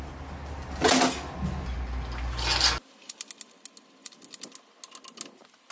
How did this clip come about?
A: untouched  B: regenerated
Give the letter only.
A